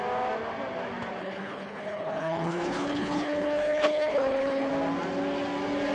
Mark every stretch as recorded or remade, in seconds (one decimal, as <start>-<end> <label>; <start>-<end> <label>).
0.0-1.2 recorded; 1.2-4.7 remade; 4.7-5.9 recorded